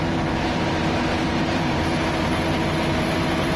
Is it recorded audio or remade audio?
remade